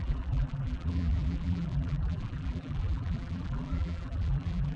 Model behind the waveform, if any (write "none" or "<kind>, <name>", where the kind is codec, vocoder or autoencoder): vocoder, BigVGAN v2